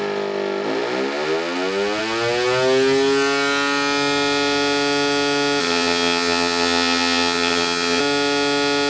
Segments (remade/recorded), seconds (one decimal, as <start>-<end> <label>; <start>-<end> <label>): 0.0-5.6 recorded; 5.6-8.0 remade; 8.0-8.9 recorded